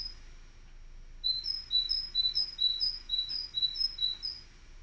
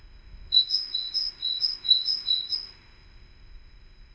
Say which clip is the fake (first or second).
second